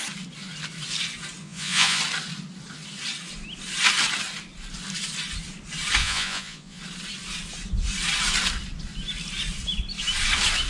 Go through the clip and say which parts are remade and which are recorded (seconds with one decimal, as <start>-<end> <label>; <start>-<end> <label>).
0.0-1.4 recorded; 1.4-2.0 remade; 2.0-6.0 recorded; 6.0-6.8 remade; 6.8-10.7 recorded